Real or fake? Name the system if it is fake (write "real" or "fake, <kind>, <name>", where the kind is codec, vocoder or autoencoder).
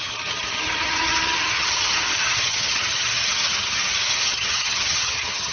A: fake, vocoder, HiFi-GAN